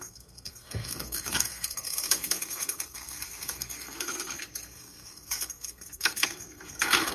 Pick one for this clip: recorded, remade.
remade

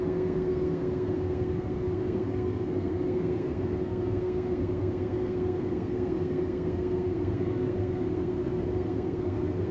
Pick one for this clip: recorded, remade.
remade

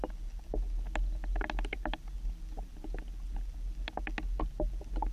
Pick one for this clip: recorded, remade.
recorded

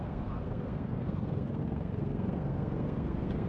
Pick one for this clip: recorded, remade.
remade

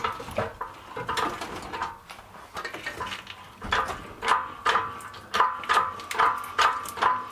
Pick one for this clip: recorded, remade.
recorded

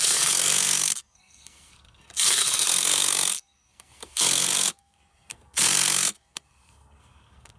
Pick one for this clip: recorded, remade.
remade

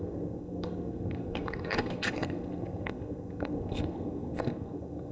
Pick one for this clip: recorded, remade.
remade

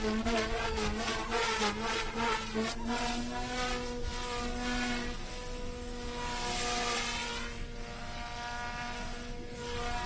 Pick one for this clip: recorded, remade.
recorded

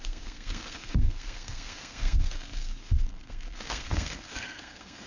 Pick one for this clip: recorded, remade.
remade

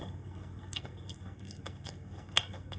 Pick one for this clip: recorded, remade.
remade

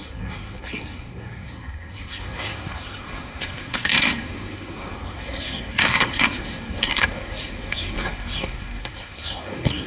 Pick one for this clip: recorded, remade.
remade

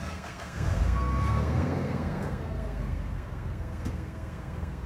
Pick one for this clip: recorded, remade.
remade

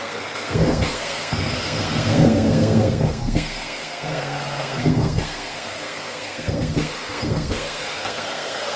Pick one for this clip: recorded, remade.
remade